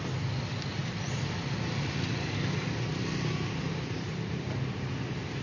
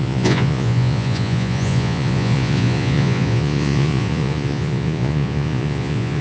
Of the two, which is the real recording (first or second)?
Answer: first